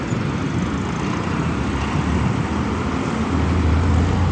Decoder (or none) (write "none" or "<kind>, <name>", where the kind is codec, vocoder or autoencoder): none